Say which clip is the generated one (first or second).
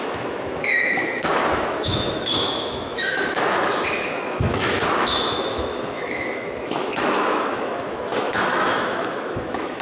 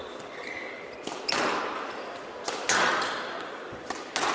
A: first